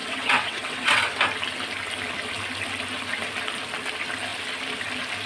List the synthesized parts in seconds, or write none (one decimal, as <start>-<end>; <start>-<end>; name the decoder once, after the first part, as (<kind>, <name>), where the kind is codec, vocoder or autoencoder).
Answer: 0.0-1.2 (vocoder, WaveNeXt)